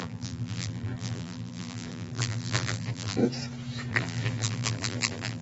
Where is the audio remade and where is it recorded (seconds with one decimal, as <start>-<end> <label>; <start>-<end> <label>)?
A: 0.0-3.2 remade; 3.2-3.9 recorded; 3.9-5.4 remade